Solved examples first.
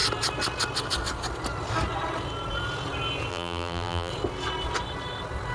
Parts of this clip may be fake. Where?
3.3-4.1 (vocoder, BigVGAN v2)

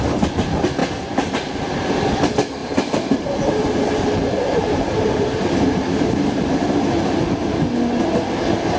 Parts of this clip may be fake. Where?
2.6-6.4 (vocoder, BigVGAN v2)

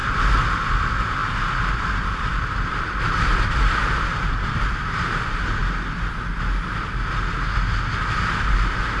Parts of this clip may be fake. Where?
0.0-1.2 (vocoder, BigVGAN v2); 1.7-5.6; 8.2-9.0

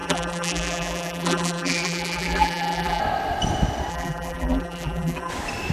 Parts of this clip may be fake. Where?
0.0-3.0 (vocoder, BigVGAN v2); 3.9-5.3

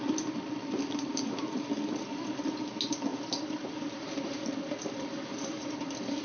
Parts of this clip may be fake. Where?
3.1-6.2 (vocoder, BigVGAN v2)